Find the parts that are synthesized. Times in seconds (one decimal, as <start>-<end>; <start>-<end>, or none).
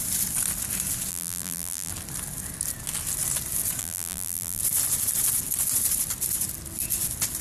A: 1.1-1.9; 3.8-4.6